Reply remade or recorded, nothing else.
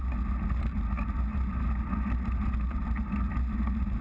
recorded